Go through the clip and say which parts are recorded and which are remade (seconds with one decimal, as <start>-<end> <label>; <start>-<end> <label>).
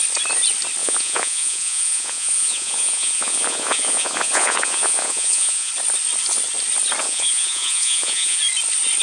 0.0-0.8 recorded; 0.8-5.7 remade; 5.7-7.0 recorded; 7.0-8.4 remade; 8.4-9.0 recorded